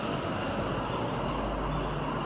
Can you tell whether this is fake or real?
real